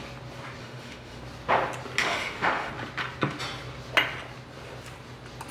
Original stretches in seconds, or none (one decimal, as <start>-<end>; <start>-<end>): 0.0-0.6; 1.2-2.0; 2.7-5.5